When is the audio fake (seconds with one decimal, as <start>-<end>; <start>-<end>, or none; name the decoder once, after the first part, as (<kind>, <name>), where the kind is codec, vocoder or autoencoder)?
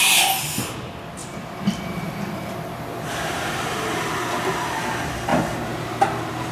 1.2-4.1 (vocoder, BigVGAN v2); 5.3-6.5